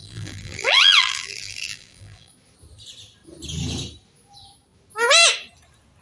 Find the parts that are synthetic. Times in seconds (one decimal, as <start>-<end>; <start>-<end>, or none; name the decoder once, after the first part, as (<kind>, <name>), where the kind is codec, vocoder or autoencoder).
0.0-2.3 (vocoder, BigVGAN v2)